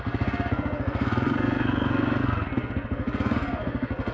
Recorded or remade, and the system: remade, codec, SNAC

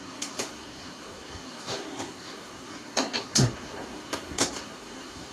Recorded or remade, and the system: remade, codec, SNAC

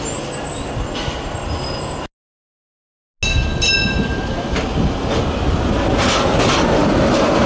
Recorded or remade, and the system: recorded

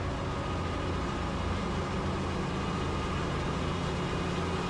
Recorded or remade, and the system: recorded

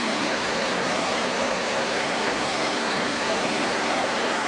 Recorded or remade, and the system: remade, codec, SNAC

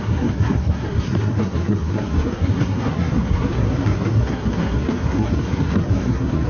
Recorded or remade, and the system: remade, codec, SNAC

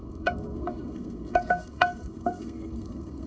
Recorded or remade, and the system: remade, codec, SNAC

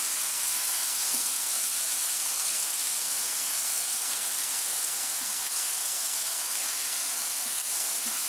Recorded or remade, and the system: remade, codec, SNAC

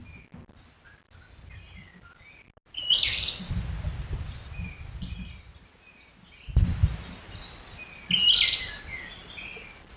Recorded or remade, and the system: recorded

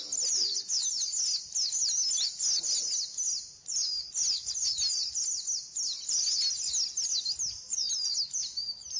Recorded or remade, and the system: recorded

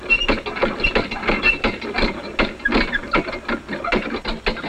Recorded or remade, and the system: recorded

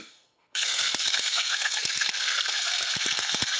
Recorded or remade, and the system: remade, codec, SNAC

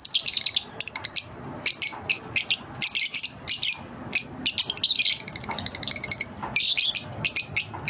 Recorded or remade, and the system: recorded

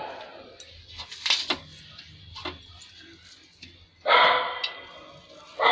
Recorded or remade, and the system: recorded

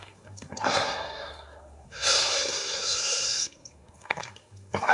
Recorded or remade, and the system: remade, codec, SNAC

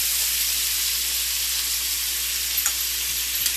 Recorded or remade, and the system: recorded